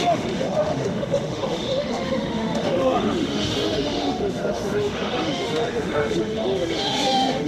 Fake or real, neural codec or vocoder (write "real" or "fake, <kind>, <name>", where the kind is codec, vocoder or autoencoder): fake, autoencoder, DAC-VAE